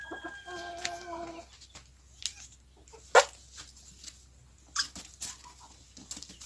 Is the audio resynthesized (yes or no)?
no